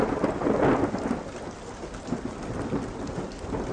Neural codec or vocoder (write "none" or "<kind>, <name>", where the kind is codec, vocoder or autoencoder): none